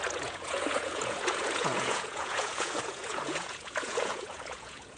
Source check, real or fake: fake